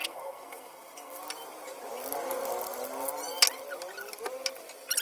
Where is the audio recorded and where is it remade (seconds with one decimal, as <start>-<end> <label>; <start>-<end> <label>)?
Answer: 0.0-1.2 remade; 1.2-5.0 recorded